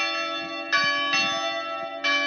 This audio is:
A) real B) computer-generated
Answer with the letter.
A